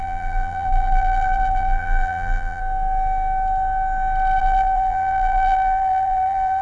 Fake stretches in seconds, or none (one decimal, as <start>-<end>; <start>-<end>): 0.0-2.6; 4.4-6.6

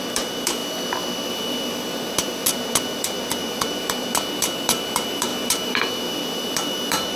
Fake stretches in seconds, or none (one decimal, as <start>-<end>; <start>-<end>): 0.0-0.6; 1.3-7.2

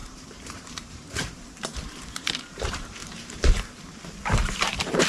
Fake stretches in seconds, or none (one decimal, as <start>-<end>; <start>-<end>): 0.0-1.3; 3.0-3.6; 4.4-5.1

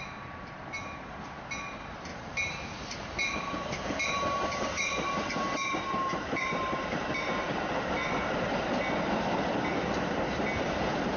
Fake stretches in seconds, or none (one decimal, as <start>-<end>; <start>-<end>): 2.1-7.1

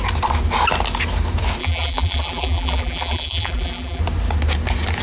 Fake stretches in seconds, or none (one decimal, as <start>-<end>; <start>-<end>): 1.6-4.0

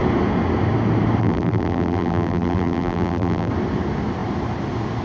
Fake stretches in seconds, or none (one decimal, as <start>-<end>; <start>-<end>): 1.2-3.5